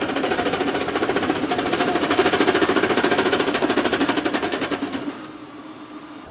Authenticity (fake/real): fake